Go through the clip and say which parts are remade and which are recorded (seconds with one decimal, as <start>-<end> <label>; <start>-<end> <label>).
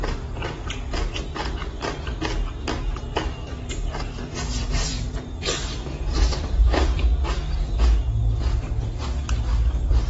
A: 0.0-1.6 recorded; 1.6-2.1 remade; 2.1-4.6 recorded; 4.6-7.0 remade; 7.0-10.1 recorded